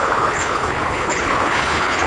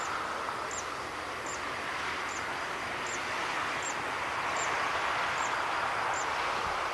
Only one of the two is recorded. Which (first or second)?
second